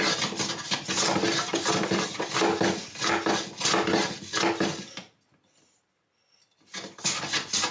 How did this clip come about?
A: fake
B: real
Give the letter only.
B